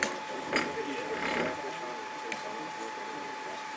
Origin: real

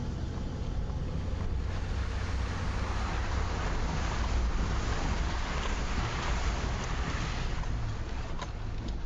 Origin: real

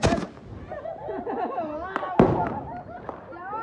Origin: real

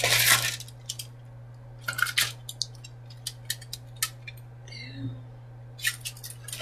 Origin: real